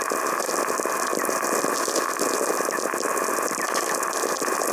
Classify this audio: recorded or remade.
recorded